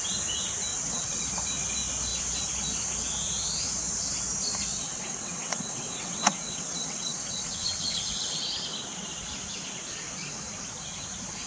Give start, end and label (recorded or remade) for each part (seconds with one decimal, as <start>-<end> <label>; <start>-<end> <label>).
0.0-0.7 recorded; 0.7-1.2 remade; 1.2-4.7 recorded; 4.7-8.0 remade; 8.0-11.5 recorded

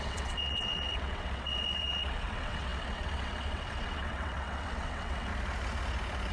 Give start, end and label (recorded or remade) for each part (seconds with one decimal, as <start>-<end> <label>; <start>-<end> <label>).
0.0-5.3 remade; 5.3-6.3 recorded

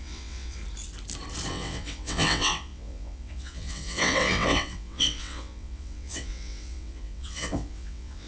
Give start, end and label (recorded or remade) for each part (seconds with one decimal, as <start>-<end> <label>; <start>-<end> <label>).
0.0-0.6 remade; 0.6-1.5 recorded; 1.5-8.3 remade

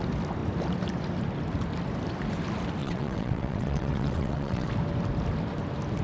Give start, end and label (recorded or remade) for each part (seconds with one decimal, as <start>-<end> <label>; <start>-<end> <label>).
0.0-2.8 recorded; 2.8-4.7 remade; 4.7-6.0 recorded